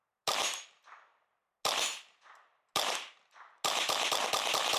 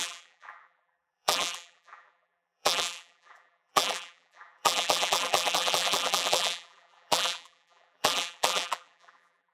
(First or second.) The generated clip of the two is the second